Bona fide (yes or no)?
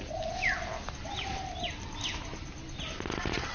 yes